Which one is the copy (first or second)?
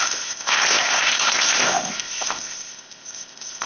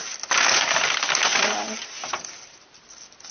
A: first